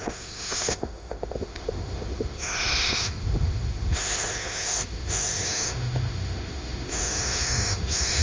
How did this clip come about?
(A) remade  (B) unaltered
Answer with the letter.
A